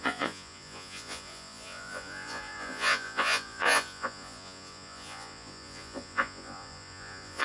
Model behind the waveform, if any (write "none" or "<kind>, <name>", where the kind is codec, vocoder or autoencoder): vocoder, Vocos